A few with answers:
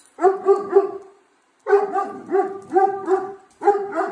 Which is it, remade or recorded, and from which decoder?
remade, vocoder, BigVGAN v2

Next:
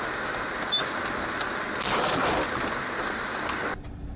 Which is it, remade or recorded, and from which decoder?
recorded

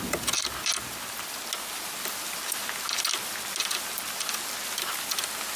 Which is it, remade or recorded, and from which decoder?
recorded